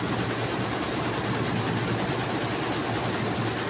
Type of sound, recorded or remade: recorded